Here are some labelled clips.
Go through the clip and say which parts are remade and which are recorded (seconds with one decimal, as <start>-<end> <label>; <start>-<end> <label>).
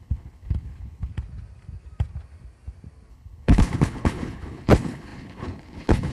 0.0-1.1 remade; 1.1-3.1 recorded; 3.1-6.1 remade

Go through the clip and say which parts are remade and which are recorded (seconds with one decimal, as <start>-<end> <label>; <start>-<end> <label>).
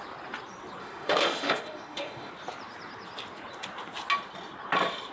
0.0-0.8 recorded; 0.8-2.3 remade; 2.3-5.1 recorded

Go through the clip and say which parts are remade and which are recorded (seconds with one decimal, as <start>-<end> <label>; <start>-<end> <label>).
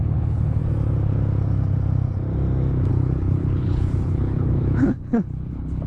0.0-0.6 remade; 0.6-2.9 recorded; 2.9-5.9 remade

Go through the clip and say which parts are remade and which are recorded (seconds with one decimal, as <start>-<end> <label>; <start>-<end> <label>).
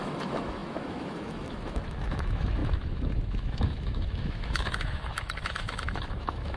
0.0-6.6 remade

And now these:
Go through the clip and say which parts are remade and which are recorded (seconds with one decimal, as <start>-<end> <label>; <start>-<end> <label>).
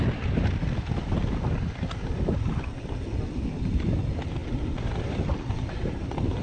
0.0-6.4 recorded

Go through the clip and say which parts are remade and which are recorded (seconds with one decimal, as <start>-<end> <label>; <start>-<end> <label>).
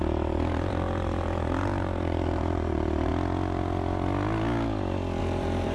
0.0-3.1 remade; 3.1-5.2 recorded; 5.2-5.7 remade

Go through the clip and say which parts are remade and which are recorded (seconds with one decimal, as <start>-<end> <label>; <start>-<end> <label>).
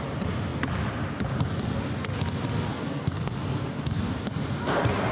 0.0-2.7 recorded; 2.7-4.0 remade; 4.0-5.1 recorded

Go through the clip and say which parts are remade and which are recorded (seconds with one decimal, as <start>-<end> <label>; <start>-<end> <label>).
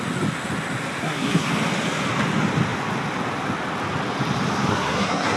0.0-1.0 recorded; 1.0-1.5 remade; 1.5-4.7 recorded; 4.7-5.4 remade